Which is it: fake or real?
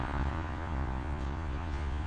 fake